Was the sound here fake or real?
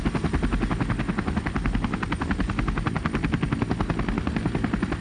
real